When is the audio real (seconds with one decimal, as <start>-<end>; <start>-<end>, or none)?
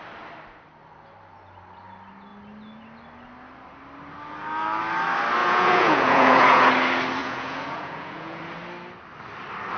0.0-5.4; 6.7-7.2; 8.4-9.8